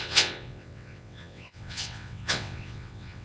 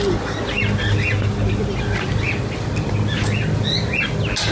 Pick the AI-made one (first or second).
first